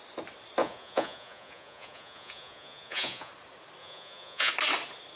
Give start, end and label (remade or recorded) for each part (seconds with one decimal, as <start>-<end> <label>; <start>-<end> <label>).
0.0-0.6 recorded; 0.6-3.3 remade; 3.3-3.8 recorded; 3.8-4.5 remade; 4.5-5.2 recorded